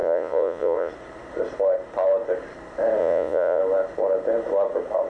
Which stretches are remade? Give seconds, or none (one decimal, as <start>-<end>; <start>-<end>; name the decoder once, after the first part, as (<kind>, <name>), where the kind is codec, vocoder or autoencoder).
0.0-0.9 (vocoder, Vocos); 3.0-3.6